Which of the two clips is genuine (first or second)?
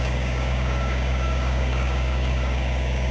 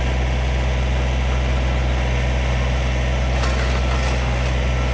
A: second